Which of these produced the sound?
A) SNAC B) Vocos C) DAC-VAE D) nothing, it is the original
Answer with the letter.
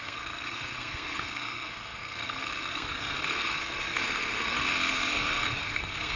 A